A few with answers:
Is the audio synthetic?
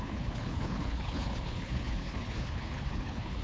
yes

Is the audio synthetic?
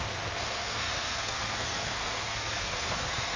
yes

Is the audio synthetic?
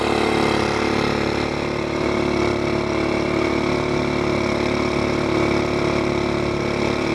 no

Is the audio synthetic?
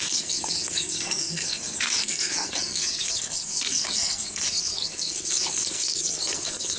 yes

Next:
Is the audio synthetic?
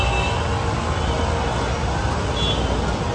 no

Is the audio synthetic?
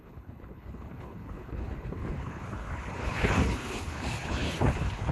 yes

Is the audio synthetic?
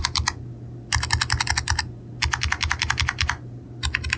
no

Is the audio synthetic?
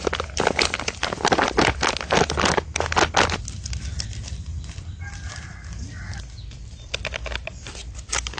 no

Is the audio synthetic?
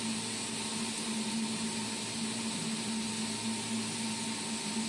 no